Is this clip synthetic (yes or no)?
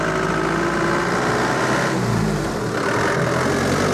no